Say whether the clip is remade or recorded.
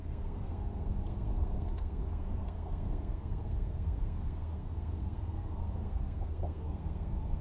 remade